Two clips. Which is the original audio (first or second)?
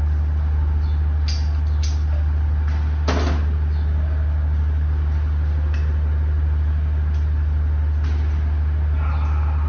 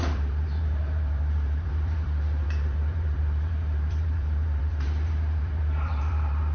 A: first